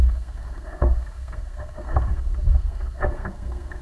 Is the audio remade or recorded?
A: remade